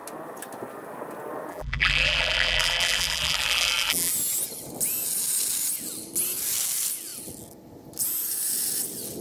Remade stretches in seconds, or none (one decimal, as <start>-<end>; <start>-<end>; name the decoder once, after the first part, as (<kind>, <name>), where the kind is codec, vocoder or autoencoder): 1.5-4.1 (vocoder, BigVGAN v2)